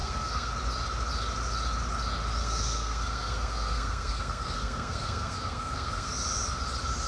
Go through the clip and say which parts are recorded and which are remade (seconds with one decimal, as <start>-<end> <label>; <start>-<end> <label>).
0.0-0.5 remade; 0.5-2.4 recorded; 2.4-6.1 remade; 6.1-7.1 recorded